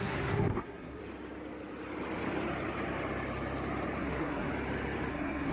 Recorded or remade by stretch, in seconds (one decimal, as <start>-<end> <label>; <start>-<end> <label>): 0.0-1.0 remade; 1.0-4.0 recorded; 4.0-4.5 remade; 4.5-5.1 recorded; 5.1-5.5 remade